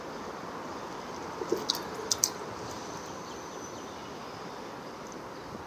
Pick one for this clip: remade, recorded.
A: recorded